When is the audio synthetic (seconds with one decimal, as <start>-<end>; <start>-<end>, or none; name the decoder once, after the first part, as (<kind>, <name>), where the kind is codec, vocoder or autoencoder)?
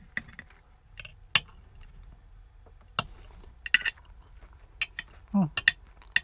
none